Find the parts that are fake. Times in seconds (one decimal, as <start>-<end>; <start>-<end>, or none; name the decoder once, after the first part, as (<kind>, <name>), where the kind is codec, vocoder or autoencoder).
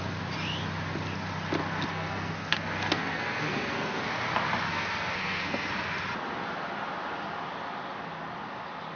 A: 1.9-4.0 (codec, SNAC); 4.7-5.7